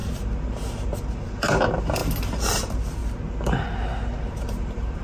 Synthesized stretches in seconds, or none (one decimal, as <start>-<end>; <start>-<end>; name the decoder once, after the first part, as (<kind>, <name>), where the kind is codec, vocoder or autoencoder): 0.0-3.0 (vocoder, BigVGAN v2); 4.2-5.0